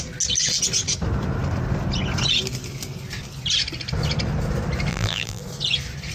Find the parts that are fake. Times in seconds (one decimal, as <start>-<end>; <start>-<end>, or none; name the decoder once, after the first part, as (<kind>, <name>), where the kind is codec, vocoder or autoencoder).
4.9-5.4 (vocoder, BigVGAN v2)